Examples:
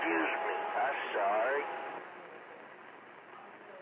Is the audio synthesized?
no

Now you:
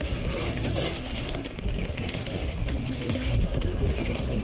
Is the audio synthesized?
yes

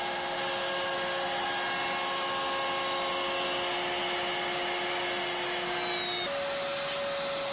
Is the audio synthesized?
no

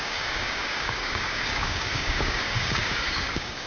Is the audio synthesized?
yes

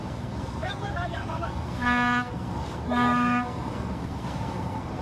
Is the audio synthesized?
yes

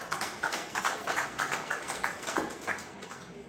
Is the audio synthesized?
yes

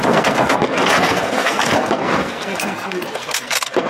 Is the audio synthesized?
yes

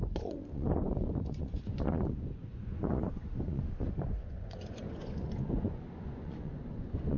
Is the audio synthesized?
yes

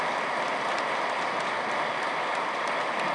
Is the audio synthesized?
no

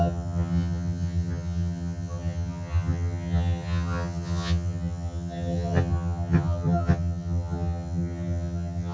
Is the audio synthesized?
yes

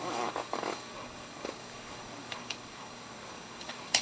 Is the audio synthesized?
yes